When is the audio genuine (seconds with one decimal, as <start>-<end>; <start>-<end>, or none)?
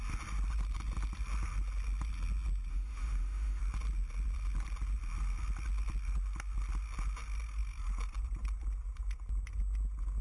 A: 0.0-2.7; 3.6-10.2